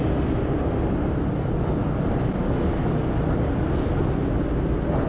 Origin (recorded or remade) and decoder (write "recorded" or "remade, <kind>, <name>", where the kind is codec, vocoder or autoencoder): recorded